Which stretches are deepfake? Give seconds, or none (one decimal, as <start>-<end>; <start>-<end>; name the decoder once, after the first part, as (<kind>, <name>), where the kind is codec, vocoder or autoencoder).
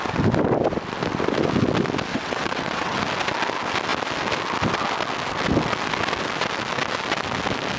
2.1-3.0 (vocoder, WaveNeXt)